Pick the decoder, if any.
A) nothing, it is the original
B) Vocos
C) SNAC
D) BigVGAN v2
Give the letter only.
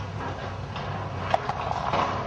A